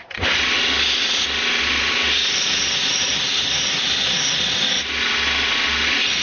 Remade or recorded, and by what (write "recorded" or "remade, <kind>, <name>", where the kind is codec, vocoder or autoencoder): recorded